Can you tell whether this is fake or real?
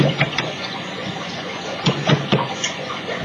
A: fake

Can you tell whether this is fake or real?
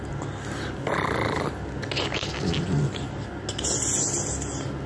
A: real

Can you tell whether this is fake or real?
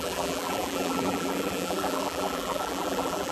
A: fake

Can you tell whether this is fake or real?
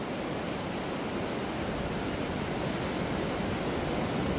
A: real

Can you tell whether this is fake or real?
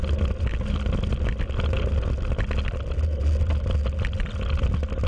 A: real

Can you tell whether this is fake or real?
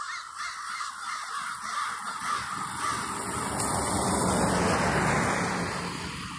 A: real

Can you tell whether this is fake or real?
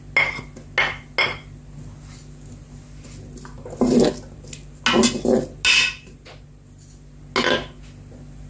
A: real